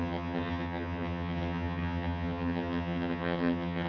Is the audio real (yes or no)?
no